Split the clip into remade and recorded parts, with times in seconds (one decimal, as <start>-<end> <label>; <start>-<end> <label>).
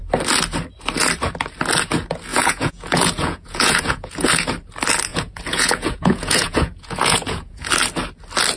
0.0-2.3 recorded; 2.3-4.3 remade; 4.3-5.1 recorded; 5.1-7.7 remade; 7.7-8.6 recorded